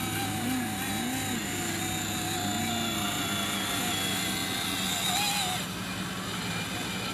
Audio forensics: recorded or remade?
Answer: recorded